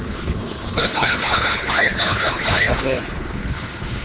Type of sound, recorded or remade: remade